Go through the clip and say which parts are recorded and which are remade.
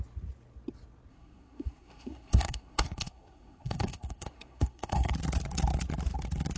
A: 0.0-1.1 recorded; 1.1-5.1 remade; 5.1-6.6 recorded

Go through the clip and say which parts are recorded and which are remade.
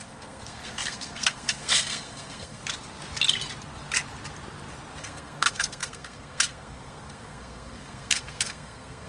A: 0.0-2.6 remade; 2.6-5.0 recorded; 5.0-9.1 remade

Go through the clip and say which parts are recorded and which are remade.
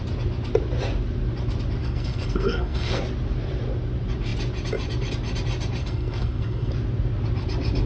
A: 0.0-1.8 recorded; 1.8-3.0 remade; 3.0-5.8 recorded; 5.8-6.7 remade; 6.7-7.9 recorded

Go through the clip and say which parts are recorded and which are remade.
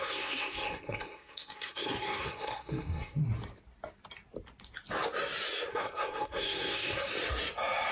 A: 0.0-3.2 remade; 3.2-5.7 recorded; 5.7-7.1 remade; 7.1-7.9 recorded